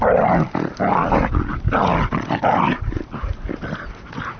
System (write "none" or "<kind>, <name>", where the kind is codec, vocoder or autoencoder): none